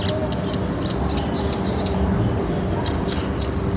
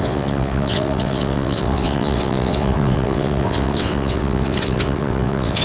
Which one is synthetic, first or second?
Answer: second